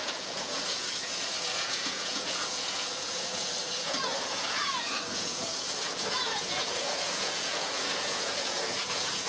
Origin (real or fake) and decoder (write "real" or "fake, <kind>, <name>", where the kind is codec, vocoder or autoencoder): fake, vocoder, Vocos